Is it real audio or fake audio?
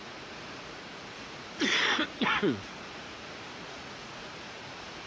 fake